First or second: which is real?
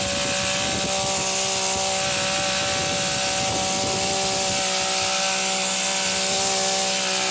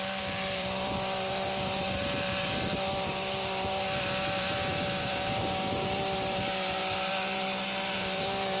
first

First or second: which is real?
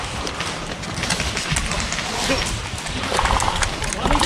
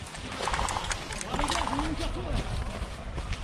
second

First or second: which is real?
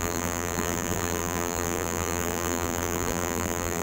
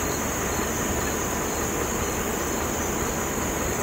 second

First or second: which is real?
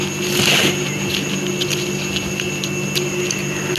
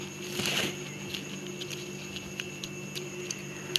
first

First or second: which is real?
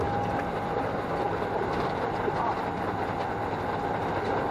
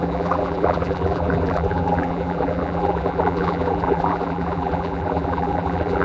first